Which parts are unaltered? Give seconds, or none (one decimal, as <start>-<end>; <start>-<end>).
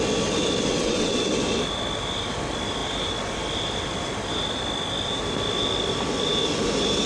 0.0-0.7; 1.3-7.1